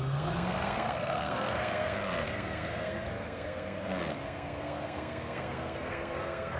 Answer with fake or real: fake